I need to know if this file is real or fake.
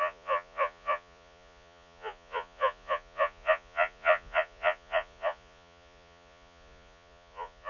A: fake